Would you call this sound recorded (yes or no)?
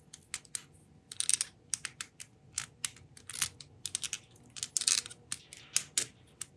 yes